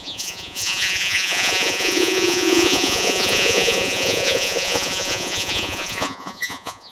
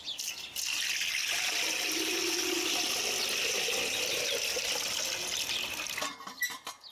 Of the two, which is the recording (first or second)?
second